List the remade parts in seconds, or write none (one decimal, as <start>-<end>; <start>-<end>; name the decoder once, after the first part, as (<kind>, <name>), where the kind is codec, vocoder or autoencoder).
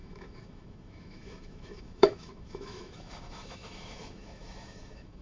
0.0-5.2 (autoencoder, DAC-VAE)